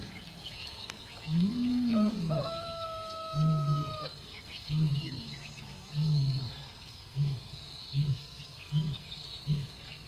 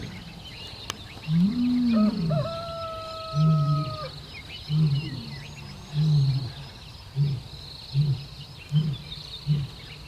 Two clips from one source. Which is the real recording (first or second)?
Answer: second